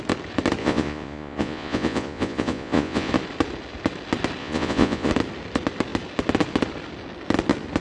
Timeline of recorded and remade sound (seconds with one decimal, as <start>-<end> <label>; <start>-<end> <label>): 0.0-0.6 recorded; 0.6-3.1 remade; 3.1-4.4 recorded; 4.4-5.1 remade; 5.1-7.8 recorded